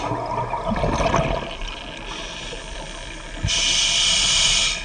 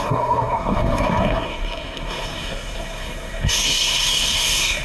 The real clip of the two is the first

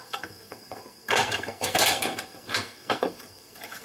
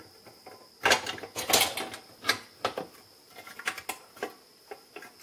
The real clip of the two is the second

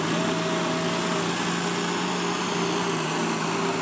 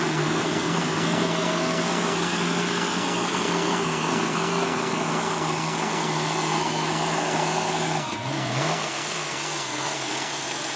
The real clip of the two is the first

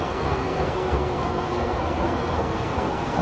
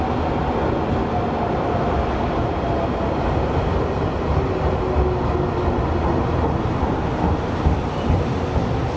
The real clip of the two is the second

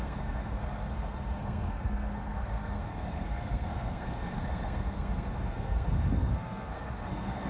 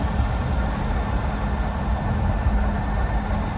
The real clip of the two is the second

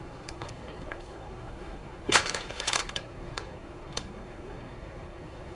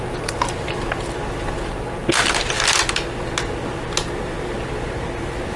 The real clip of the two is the second